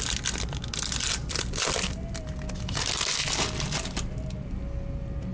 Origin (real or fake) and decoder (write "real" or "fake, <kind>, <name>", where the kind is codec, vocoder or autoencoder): real